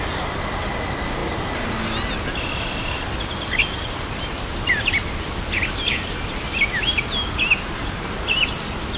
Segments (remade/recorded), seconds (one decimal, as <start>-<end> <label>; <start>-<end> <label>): 0.0-9.0 recorded